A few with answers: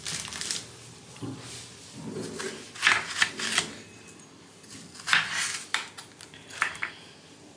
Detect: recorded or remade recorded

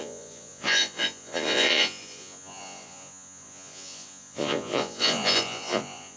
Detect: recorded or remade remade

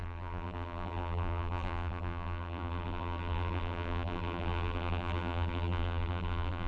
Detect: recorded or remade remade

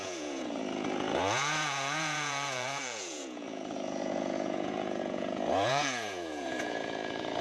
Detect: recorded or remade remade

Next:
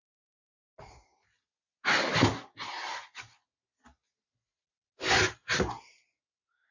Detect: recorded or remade recorded